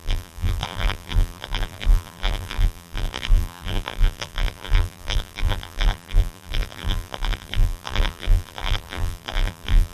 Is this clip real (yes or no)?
no